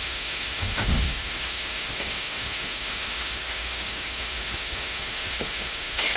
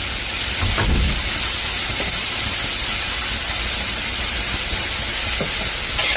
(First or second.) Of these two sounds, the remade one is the first